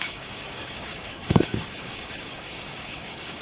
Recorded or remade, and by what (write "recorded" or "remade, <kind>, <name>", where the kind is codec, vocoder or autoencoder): remade, codec, DAC